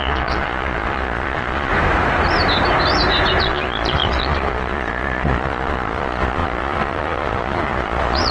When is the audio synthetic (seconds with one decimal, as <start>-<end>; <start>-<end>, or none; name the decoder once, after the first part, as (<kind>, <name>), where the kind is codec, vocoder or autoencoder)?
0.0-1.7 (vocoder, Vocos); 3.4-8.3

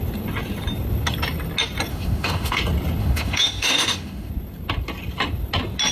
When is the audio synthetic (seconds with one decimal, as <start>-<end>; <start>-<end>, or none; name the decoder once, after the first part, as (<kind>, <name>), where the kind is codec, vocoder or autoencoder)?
1.9-2.6 (autoencoder, DAC-VAE); 3.0-4.3

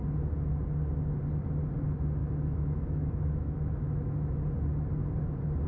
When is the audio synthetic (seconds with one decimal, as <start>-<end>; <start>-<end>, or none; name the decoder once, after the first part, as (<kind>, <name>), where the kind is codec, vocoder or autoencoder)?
2.2-4.3 (autoencoder, DAC-VAE)